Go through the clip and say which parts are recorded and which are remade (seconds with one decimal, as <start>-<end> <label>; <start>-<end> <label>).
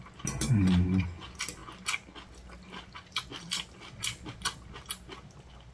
0.0-5.7 recorded